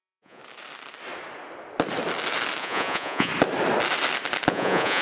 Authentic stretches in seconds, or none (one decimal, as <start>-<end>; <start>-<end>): 0.4-2.6; 3.3-4.5